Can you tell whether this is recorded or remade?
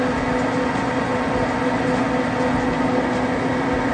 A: recorded